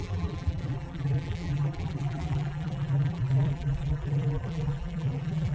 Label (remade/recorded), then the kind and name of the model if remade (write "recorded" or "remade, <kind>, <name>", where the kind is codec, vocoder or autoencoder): remade, vocoder, BigVGAN v2